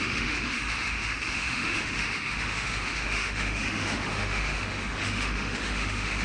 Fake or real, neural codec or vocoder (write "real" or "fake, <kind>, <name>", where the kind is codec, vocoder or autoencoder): fake, autoencoder, DAC-VAE